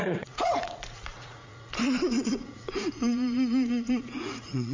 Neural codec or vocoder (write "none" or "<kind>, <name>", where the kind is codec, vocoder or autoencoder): vocoder, Vocos